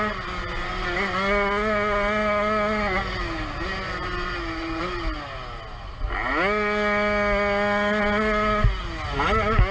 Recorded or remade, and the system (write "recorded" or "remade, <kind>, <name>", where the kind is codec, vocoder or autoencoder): recorded